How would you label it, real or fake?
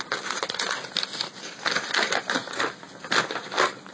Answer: real